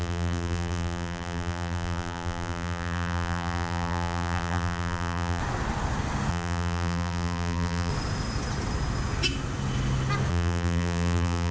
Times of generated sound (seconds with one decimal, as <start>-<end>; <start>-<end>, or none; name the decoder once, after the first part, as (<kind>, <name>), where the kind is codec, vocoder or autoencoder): 0.0-5.4 (vocoder, BigVGAN v2); 6.3-7.9; 10.3-11.5